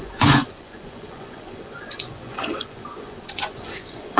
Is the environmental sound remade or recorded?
remade